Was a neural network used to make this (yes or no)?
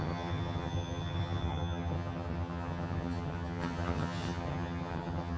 yes